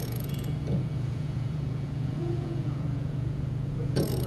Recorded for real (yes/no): no